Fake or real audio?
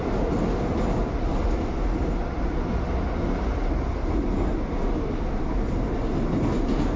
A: real